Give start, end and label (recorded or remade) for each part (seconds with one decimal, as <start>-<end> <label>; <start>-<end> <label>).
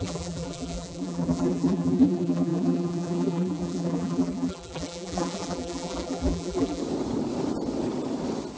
0.0-6.8 remade; 6.8-8.6 recorded